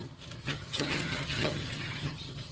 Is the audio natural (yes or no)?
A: no